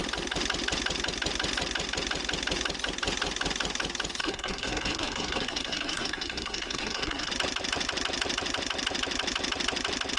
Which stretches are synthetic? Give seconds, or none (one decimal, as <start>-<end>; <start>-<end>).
4.2-7.3